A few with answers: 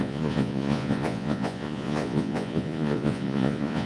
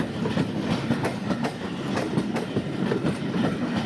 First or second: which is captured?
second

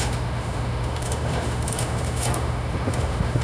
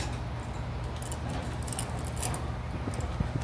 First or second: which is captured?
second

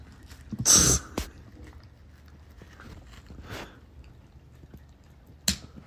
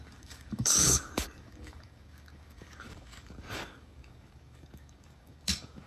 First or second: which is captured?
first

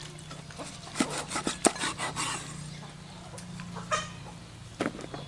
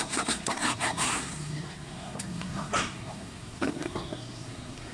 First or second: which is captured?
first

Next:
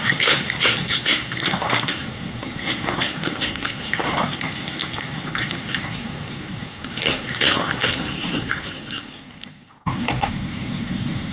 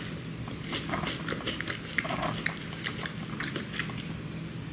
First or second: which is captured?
second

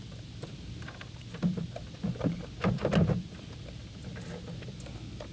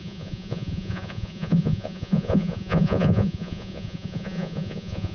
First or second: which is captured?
first